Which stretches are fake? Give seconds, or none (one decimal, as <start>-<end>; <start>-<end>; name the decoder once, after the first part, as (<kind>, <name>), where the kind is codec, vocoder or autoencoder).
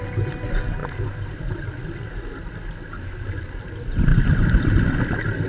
none